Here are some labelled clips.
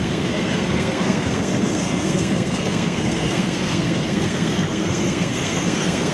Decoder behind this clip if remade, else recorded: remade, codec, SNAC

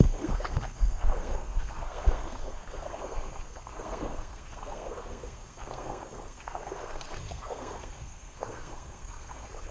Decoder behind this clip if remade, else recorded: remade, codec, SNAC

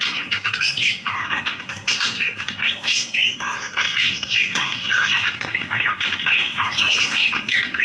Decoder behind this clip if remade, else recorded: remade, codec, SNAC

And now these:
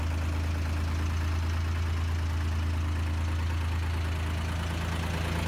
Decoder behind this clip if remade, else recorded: recorded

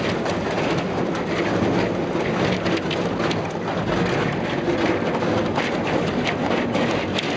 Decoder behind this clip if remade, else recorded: recorded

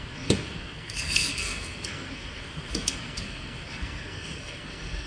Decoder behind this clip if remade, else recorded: remade, codec, SNAC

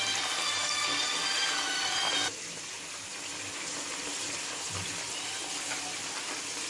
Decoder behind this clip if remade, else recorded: recorded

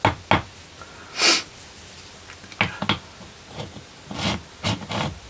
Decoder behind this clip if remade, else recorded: recorded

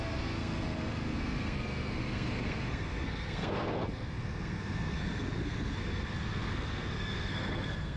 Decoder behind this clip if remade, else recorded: remade, codec, SNAC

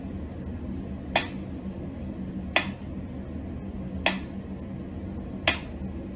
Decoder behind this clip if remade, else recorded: recorded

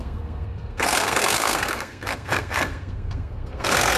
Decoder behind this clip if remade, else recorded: remade, codec, SNAC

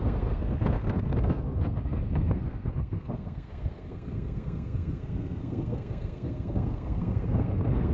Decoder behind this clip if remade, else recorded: remade, codec, SNAC